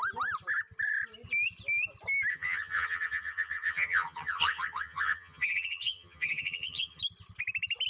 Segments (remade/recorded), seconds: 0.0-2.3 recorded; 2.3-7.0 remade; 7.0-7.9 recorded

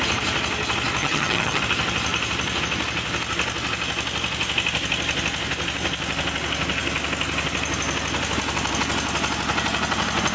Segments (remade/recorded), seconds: 0.0-1.0 recorded; 1.0-1.6 remade; 1.6-10.3 recorded

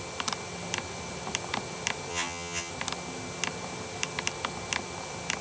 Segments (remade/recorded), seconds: 0.0-2.1 recorded; 2.1-2.7 remade; 2.7-5.4 recorded

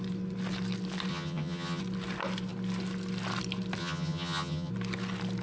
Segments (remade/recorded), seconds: 0.0-1.1 recorded; 1.1-1.8 remade; 1.8-3.8 recorded; 3.8-4.7 remade; 4.7-5.4 recorded

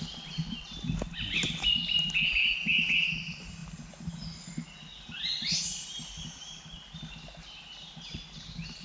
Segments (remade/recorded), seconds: 0.0-8.8 recorded

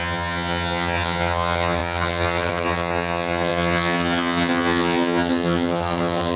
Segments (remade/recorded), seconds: 0.0-6.4 remade